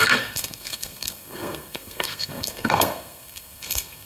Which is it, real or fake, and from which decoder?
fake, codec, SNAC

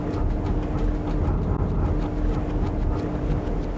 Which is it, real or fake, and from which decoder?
real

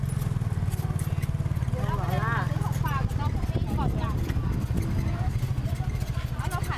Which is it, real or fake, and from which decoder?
real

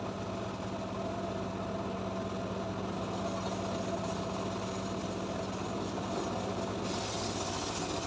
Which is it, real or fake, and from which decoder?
real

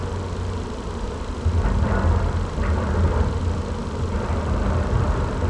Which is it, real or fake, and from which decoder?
real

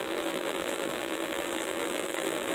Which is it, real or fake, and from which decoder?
fake, vocoder, BigVGAN v2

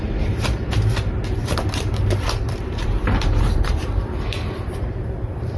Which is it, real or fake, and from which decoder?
fake, vocoder, BigVGAN v2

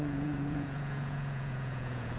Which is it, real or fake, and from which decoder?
fake, vocoder, Vocos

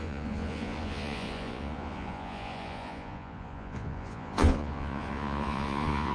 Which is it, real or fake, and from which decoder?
fake, vocoder, Vocos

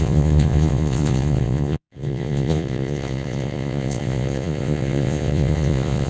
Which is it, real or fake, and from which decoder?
fake, vocoder, Vocos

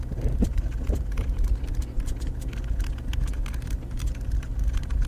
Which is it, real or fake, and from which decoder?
real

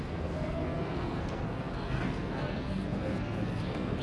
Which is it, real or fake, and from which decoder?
fake, codec, SNAC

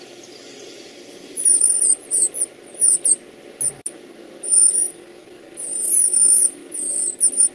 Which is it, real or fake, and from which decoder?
real